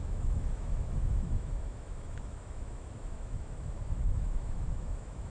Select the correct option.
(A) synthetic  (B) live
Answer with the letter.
A